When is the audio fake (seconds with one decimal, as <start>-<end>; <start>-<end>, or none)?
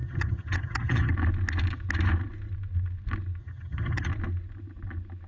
0.0-1.1; 3.4-4.1